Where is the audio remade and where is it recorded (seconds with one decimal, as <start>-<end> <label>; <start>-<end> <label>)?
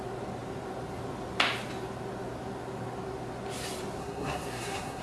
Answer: 0.0-4.0 recorded; 4.0-5.0 remade